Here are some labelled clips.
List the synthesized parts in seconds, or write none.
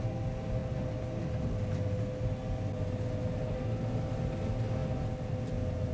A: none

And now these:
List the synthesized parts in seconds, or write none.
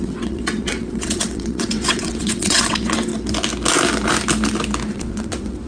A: 0.0-3.1 (vocoder, WaveNeXt); 4.9-5.7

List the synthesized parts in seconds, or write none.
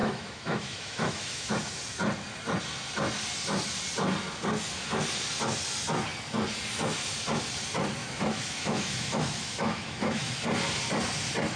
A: 0.0-1.5 (autoencoder, DAC-VAE); 8.0-10.3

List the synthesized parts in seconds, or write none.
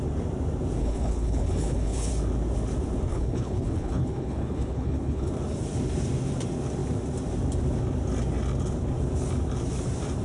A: 0.8-2.1 (codec, HILCodec); 3.1-5.3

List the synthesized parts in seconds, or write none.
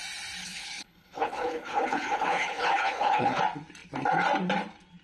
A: 0.4-3.4 (codec, HILCodec)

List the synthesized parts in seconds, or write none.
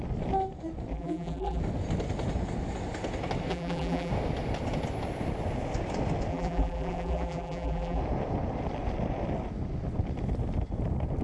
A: 0.9-1.6 (vocoder, BigVGAN v2); 3.5-4.1; 6.3-8.0